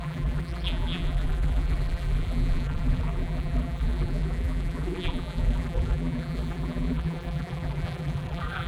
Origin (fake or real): fake